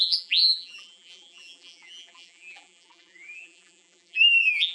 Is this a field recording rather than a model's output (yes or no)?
no